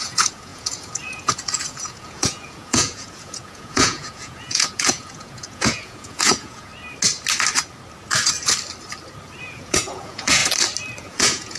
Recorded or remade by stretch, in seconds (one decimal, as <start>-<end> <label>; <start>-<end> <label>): 0.0-6.7 remade; 6.7-9.4 recorded; 9.4-10.4 remade; 10.4-11.0 recorded; 11.0-11.6 remade